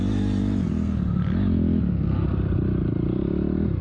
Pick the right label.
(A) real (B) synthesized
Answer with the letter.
A